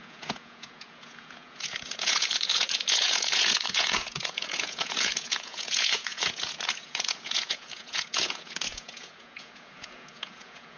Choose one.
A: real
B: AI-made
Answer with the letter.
B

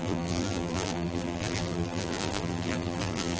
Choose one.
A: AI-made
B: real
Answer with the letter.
A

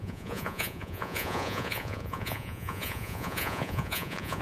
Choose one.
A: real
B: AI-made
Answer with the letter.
B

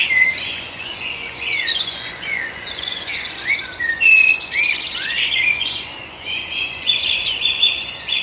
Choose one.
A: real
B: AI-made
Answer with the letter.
B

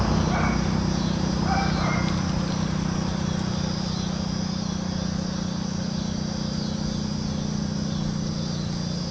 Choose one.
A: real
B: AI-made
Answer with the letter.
A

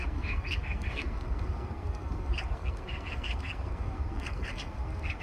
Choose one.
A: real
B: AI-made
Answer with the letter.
B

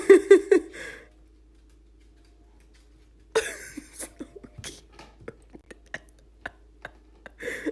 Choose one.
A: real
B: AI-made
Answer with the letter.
A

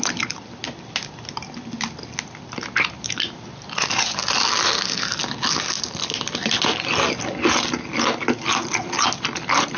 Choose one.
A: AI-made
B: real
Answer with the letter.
B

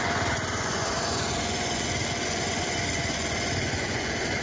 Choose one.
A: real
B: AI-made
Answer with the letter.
B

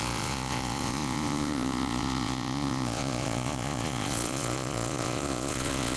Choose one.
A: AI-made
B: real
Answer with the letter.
A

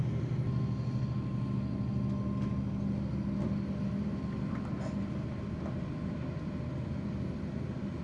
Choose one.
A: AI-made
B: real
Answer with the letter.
B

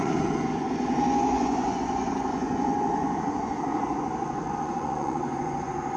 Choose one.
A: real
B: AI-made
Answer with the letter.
B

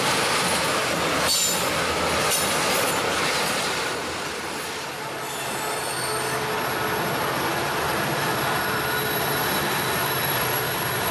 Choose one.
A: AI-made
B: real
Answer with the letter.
B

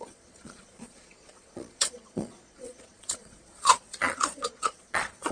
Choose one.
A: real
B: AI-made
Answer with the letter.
B